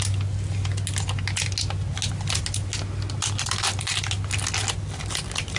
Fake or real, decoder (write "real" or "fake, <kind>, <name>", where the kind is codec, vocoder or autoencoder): real